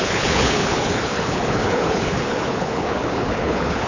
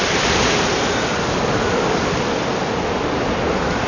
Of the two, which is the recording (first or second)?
second